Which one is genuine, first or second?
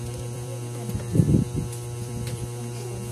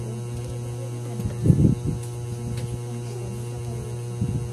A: second